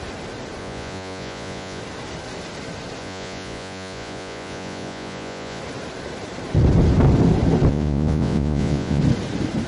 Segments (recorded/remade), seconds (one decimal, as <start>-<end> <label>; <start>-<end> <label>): 0.0-0.6 recorded; 0.6-1.8 remade; 1.8-3.0 recorded; 3.0-5.6 remade; 5.6-7.7 recorded; 7.7-9.0 remade; 9.0-9.7 recorded

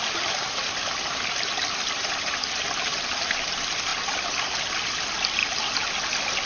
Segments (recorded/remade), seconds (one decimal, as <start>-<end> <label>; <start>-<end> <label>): 0.0-6.5 recorded

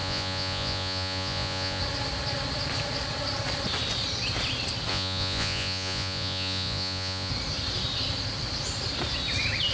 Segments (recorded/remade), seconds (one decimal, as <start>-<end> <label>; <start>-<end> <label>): 0.0-1.8 remade; 1.8-4.9 recorded; 4.9-7.3 remade; 7.3-9.7 recorded